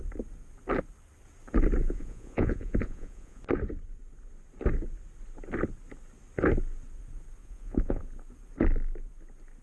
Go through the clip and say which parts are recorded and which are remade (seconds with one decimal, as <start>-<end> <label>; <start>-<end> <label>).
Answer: 0.0-1.8 recorded; 1.8-3.4 remade; 3.4-7.4 recorded; 7.4-8.0 remade; 8.0-9.6 recorded